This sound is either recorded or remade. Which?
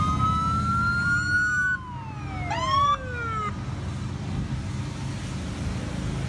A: recorded